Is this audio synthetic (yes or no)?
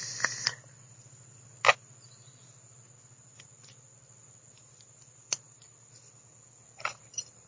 no